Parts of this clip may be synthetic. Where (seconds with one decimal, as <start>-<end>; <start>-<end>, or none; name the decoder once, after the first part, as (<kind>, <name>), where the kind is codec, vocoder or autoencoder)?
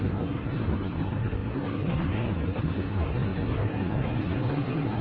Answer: 0.0-5.0 (codec, SNAC)